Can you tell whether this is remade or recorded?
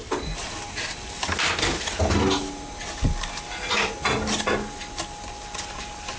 recorded